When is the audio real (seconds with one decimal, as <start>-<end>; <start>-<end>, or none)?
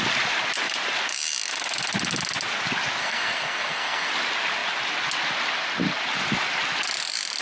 0.0-3.0; 4.1-7.4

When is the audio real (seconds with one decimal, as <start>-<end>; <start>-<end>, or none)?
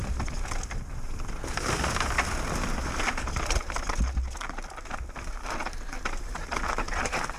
0.0-7.4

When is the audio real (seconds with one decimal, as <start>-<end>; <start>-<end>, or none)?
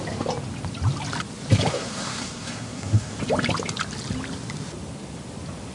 0.0-1.7; 3.1-5.7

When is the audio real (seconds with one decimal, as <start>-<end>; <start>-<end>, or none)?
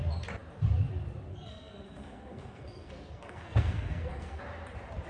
0.0-1.3; 4.4-5.1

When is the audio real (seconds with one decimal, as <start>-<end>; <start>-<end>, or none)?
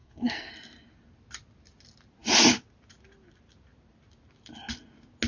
0.5-5.3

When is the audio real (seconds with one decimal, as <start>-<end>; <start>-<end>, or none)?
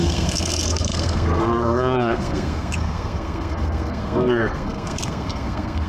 none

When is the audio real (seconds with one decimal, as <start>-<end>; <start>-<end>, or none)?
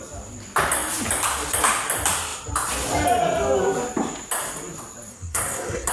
0.0-5.1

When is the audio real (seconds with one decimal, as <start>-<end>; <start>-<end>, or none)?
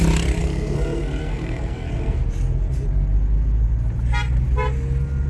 0.0-0.4; 2.2-5.3